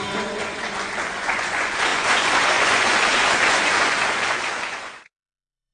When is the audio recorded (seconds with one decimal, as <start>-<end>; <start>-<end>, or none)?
none